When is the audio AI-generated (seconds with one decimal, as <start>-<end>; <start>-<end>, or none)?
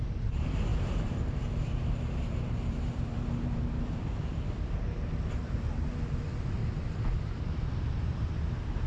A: 0.0-6.6; 7.2-8.9